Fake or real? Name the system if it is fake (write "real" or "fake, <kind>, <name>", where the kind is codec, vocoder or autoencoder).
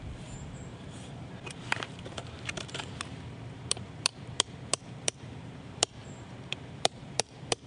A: fake, vocoder, BigVGAN v2